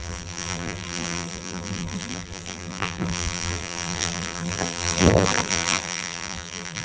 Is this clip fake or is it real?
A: fake